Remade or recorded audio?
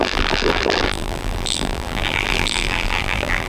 remade